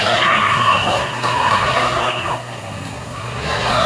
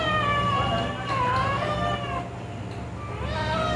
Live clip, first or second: second